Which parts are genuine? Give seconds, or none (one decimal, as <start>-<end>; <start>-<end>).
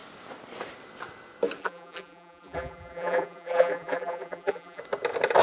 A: 0.0-1.6; 4.8-5.4